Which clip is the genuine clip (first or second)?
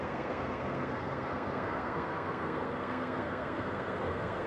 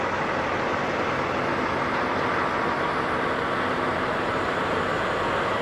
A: second